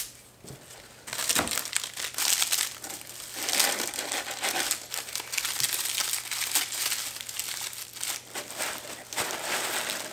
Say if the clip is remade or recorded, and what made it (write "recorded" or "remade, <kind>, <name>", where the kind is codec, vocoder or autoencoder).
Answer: recorded